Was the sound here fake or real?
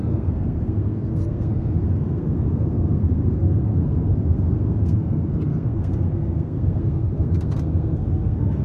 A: fake